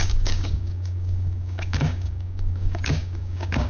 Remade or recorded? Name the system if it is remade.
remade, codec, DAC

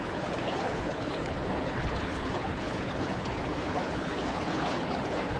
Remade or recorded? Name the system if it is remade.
remade, codec, HILCodec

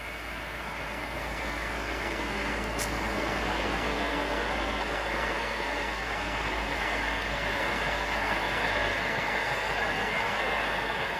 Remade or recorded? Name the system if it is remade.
remade, codec, SNAC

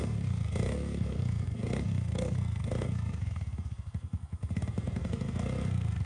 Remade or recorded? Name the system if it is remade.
remade, codec, SNAC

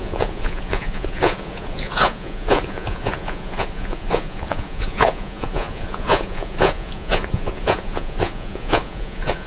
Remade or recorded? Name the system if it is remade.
remade, vocoder, Vocos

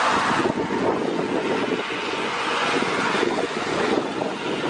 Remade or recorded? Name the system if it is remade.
remade, vocoder, Vocos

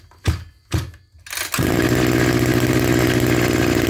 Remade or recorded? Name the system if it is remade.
recorded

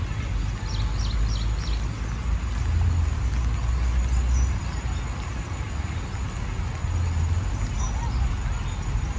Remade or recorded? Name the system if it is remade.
recorded